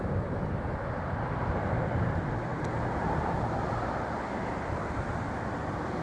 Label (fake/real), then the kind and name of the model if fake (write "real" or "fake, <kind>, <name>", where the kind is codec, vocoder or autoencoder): fake, vocoder, BigVGAN v2